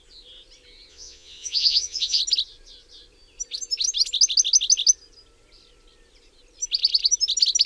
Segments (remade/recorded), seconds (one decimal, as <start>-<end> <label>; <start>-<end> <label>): 0.0-0.9 recorded; 0.9-2.2 remade; 2.2-7.7 recorded